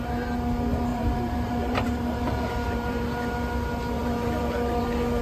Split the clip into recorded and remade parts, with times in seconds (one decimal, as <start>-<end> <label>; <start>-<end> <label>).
0.0-0.9 recorded; 0.9-3.0 remade; 3.0-4.0 recorded; 4.0-4.8 remade; 4.8-5.2 recorded